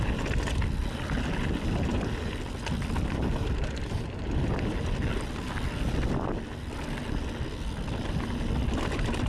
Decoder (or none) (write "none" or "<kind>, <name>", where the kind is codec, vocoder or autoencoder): none